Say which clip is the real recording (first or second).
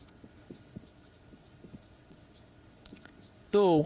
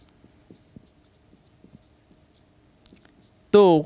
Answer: second